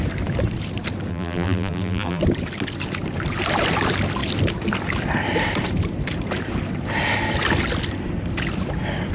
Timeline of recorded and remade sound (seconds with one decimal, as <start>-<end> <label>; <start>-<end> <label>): 0.0-1.1 recorded; 1.1-2.2 remade; 2.2-9.1 recorded

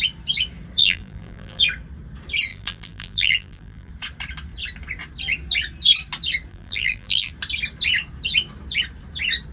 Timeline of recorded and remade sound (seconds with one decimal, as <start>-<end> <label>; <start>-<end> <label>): 0.0-0.8 recorded; 0.8-1.6 remade; 1.6-2.5 recorded; 2.5-3.9 remade; 3.9-6.5 recorded; 6.5-7.3 remade; 7.3-9.5 recorded

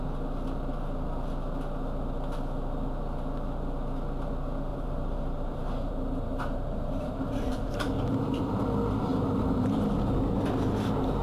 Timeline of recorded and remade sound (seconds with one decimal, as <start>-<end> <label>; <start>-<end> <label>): 0.0-4.7 recorded; 4.7-8.6 remade; 8.6-9.1 recorded; 9.1-10.1 remade; 10.1-11.2 recorded

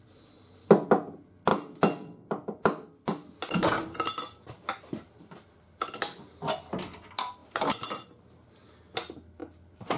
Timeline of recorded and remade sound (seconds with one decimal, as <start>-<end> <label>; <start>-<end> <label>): 0.0-7.4 recorded; 7.4-8.5 remade; 8.5-9.4 recorded; 9.4-10.0 remade

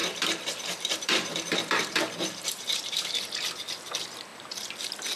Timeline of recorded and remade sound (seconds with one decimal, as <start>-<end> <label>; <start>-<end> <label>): 0.0-3.1 remade; 3.1-5.2 recorded

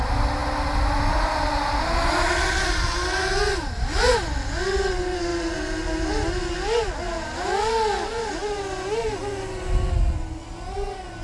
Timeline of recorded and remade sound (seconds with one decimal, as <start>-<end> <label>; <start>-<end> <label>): 0.0-8.4 recorded; 8.4-9.2 remade; 9.2-11.2 recorded

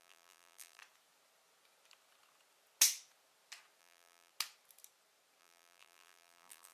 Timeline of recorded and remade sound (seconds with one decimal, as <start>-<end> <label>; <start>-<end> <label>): 0.0-0.8 remade; 0.8-3.8 recorded; 3.8-4.3 remade; 4.3-5.4 recorded; 5.4-6.7 remade

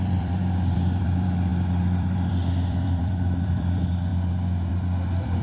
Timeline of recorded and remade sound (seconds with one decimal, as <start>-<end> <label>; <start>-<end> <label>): 0.0-5.4 remade